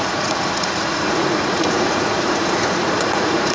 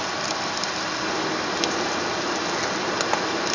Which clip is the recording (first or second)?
second